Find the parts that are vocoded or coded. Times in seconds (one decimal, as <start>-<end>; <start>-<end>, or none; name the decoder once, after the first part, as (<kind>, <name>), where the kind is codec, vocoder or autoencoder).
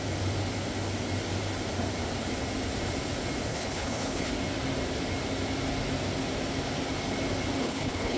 3.5-4.3 (codec, HILCodec); 7.6-8.2